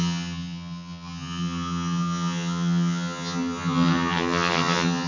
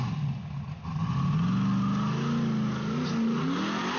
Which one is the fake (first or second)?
first